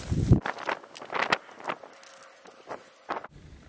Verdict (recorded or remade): recorded